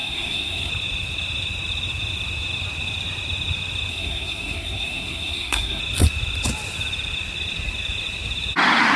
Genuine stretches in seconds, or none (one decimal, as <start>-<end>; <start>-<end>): 0.7-3.9; 5.8-9.0